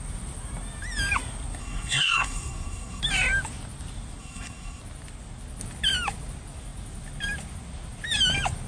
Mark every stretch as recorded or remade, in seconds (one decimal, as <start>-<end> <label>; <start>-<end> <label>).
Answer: 0.0-1.6 recorded; 1.6-3.0 remade; 3.0-4.2 recorded; 4.2-4.8 remade; 4.8-8.7 recorded